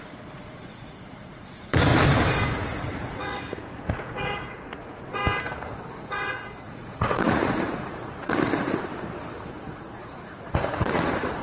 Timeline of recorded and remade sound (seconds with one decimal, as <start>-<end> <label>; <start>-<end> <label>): 0.0-1.9 remade; 1.9-2.5 recorded; 2.5-5.2 remade; 5.2-5.9 recorded; 5.9-8.9 remade; 8.9-9.5 recorded; 9.5-11.4 remade